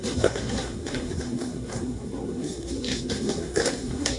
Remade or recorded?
remade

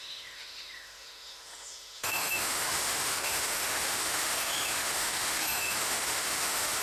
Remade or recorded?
remade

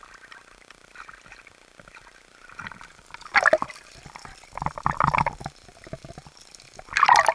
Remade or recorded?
recorded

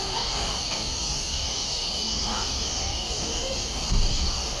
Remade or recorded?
remade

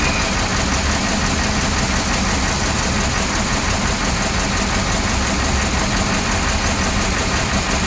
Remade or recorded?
recorded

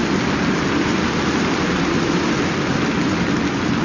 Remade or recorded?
recorded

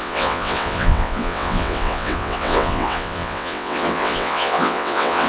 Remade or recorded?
remade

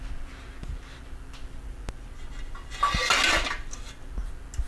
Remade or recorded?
recorded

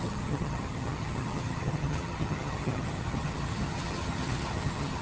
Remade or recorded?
remade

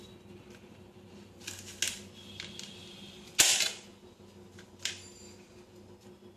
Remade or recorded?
recorded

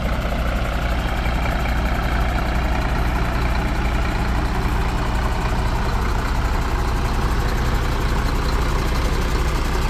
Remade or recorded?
recorded